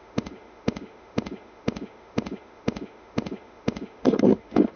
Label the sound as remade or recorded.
remade